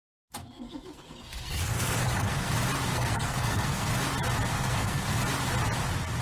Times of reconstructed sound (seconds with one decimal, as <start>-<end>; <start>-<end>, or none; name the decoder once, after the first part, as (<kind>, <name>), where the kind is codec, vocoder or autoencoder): 0.4-2.5 (codec, SNAC); 2.9-3.9; 4.5-5.2

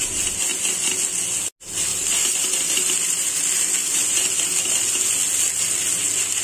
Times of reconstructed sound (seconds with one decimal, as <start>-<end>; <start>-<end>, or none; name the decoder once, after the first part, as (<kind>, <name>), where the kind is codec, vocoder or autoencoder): 1.9-3.4 (vocoder, BigVGAN v2); 3.8-4.6

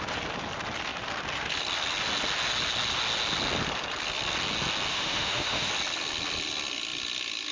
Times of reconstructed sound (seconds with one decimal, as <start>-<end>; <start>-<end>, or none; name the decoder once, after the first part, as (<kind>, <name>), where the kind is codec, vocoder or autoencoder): 4.9-5.7 (autoencoder, DAC-VAE)

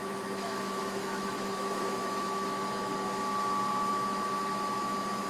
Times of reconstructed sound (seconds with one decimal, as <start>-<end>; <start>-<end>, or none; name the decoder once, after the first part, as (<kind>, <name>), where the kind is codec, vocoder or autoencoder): 0.0-2.9 (autoencoder, DAC-VAE); 3.9-5.3